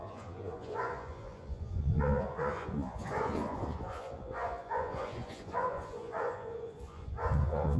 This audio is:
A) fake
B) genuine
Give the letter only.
A